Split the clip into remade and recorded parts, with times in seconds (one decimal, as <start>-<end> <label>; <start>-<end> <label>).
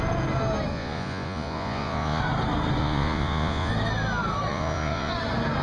0.0-0.7 recorded; 0.7-2.2 remade; 2.2-2.8 recorded; 2.8-3.7 remade; 3.7-4.5 recorded; 4.5-5.1 remade; 5.1-5.6 recorded